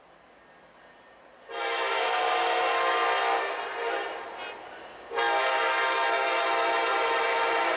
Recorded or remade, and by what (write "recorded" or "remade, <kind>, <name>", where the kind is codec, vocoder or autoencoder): recorded